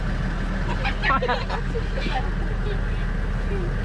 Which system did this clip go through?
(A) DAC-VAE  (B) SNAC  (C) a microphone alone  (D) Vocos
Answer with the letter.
C